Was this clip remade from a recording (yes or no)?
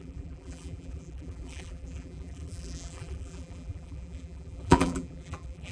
yes